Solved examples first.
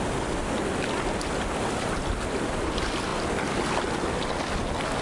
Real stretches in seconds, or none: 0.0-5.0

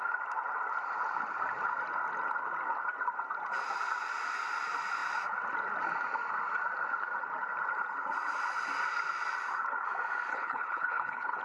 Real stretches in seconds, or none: 0.0-10.3

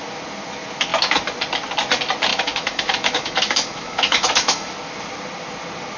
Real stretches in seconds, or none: 0.0-2.3; 4.7-6.0